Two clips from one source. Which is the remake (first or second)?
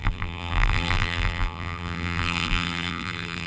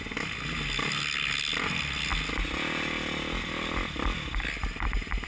first